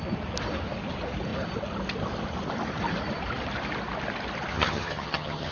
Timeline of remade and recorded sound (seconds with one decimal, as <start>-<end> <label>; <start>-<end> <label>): 0.0-4.5 recorded; 4.5-5.5 remade